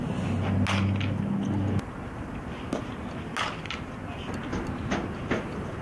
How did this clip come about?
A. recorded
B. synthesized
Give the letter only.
A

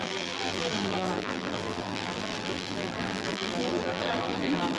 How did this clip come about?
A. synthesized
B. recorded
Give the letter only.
A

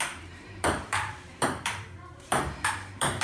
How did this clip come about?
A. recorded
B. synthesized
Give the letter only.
B